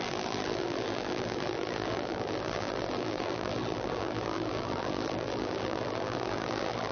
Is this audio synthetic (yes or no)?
yes